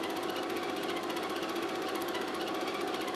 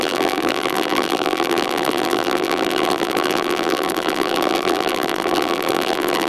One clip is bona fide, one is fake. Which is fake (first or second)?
second